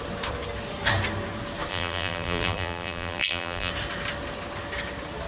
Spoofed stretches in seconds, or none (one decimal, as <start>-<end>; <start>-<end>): 1.7-3.7